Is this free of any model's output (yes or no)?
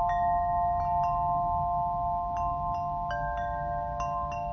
yes